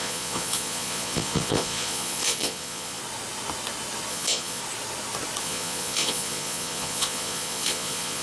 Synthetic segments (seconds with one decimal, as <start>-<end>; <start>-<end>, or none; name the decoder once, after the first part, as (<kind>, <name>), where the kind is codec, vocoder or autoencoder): 0.0-3.0 (vocoder, Vocos); 4.1-4.6; 5.4-8.2